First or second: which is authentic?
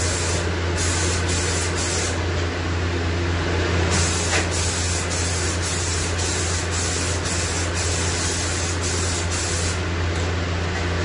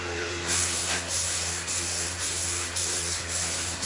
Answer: first